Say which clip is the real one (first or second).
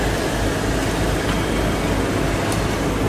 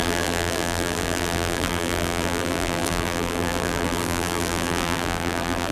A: first